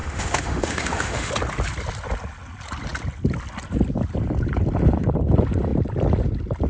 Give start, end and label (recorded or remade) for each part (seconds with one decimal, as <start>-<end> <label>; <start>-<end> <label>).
0.0-1.3 remade; 1.3-6.7 recorded